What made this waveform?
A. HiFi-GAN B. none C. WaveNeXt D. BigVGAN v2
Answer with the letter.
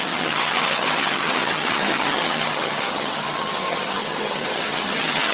A